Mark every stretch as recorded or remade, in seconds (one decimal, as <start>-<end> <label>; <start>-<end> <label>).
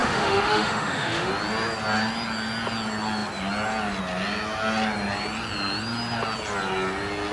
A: 0.0-1.3 remade; 1.3-7.3 recorded